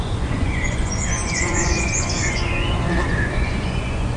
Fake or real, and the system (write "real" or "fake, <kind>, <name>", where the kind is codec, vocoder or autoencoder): fake, vocoder, Vocos